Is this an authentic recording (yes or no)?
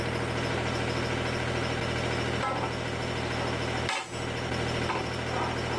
yes